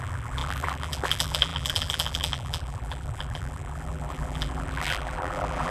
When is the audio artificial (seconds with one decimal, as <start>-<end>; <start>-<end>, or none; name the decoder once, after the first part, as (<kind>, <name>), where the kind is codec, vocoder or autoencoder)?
0.0-5.7 (vocoder, BigVGAN v2)